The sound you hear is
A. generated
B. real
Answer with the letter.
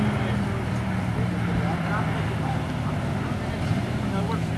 B